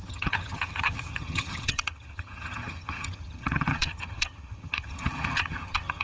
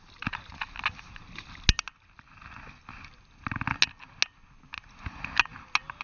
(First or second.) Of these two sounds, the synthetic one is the first